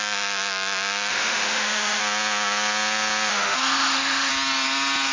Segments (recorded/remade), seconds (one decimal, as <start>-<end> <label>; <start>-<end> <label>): 0.0-1.1 recorded; 1.1-2.0 remade; 2.0-3.3 recorded; 3.3-4.3 remade; 4.3-5.1 recorded